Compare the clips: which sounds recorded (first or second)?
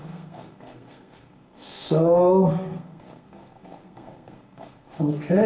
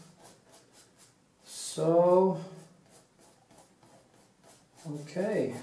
second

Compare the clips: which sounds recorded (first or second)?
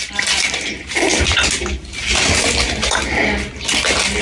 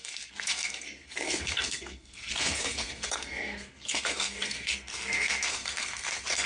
first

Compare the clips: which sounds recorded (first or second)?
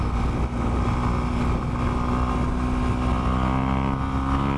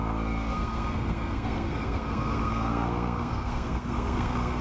first